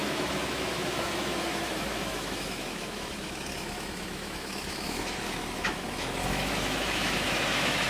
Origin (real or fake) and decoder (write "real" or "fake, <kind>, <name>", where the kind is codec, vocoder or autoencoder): fake, autoencoder, DAC-VAE